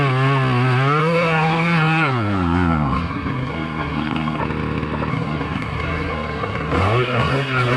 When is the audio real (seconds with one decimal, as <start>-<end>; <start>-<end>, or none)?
0.0-1.0; 4.4-5.1